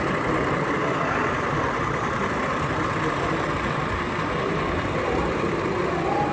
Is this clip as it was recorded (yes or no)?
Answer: no